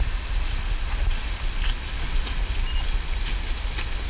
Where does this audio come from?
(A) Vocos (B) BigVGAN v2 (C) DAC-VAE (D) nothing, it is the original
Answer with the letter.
D